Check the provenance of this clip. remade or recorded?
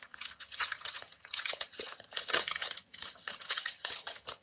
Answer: remade